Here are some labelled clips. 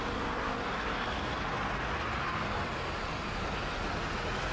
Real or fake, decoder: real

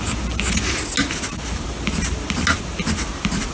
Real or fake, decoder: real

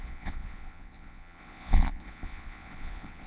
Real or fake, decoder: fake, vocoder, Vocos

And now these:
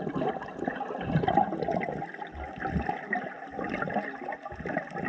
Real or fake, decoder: real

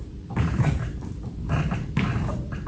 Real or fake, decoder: fake, vocoder, BigVGAN v2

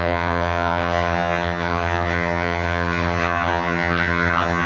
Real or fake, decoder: fake, vocoder, HiFi-GAN